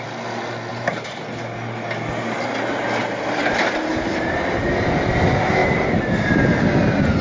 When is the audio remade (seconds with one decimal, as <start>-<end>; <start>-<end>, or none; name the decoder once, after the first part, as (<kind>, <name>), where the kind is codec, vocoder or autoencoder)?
0.7-1.2 (vocoder, BigVGAN v2); 3.0-4.7; 5.6-6.3